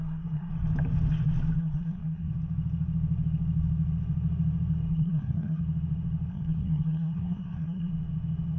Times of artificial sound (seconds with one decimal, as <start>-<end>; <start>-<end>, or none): 0.0-0.5; 1.6-2.3; 4.9-5.6; 6.3-7.9